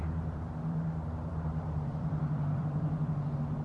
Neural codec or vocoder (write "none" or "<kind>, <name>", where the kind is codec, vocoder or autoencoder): vocoder, BigVGAN v2